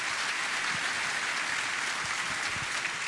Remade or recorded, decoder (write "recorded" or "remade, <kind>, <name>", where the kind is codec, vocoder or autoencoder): recorded